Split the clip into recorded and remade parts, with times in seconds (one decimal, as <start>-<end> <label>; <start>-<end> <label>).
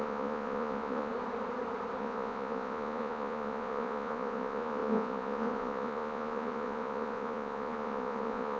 0.0-1.1 remade; 1.1-2.0 recorded; 2.0-8.6 remade